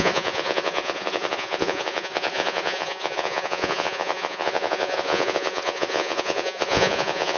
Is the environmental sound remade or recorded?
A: remade